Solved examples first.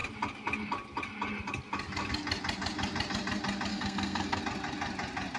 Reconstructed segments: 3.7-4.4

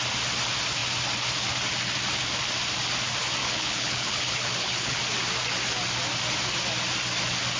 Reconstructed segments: 3.4-5.0